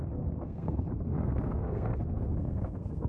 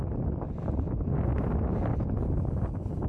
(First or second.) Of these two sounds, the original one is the second